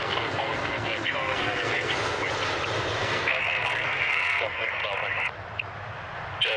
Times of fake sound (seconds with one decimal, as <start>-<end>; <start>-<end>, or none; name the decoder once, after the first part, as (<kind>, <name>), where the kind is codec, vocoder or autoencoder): 0.0-2.2 (codec, SNAC); 3.0-4.8